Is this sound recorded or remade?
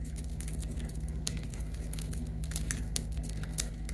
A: remade